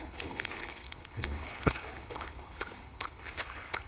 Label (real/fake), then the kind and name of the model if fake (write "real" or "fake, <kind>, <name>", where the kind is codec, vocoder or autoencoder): fake, codec, HILCodec